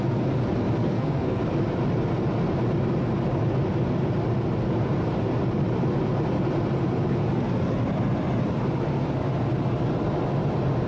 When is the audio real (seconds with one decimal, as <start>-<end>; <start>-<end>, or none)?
0.0-0.8; 1.4-10.9